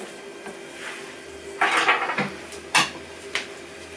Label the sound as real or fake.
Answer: real